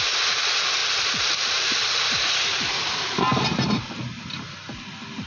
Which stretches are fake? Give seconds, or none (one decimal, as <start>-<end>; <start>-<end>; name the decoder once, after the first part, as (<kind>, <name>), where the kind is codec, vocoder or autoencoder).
0.8-4.0 (vocoder, BigVGAN v2)

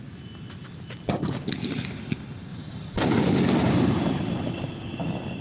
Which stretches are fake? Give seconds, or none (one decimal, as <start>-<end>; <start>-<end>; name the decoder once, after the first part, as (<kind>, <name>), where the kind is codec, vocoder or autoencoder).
2.5-3.2 (vocoder, BigVGAN v2); 3.6-4.7

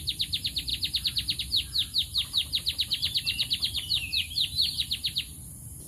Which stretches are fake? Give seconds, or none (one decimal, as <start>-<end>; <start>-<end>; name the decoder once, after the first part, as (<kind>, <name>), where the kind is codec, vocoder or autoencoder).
2.1-5.9 (vocoder, BigVGAN v2)

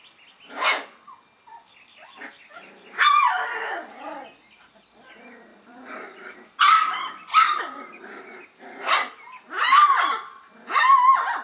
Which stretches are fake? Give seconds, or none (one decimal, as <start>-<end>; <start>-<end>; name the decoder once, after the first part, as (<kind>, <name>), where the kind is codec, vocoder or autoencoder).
5.5-8.2 (vocoder, BigVGAN v2)

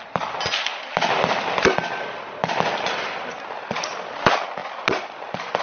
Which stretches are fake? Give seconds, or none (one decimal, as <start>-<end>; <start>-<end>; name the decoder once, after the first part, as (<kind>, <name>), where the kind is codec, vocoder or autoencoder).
none

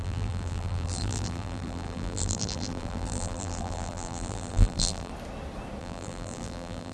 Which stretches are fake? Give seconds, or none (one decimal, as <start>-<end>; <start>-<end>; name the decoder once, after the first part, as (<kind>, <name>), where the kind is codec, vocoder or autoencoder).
0.0-5.1 (vocoder, BigVGAN v2); 5.8-6.9

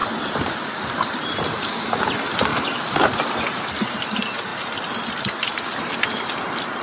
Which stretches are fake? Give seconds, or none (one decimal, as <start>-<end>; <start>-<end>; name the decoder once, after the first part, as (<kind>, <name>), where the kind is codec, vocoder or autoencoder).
0.0-1.7 (vocoder, BigVGAN v2); 2.5-3.6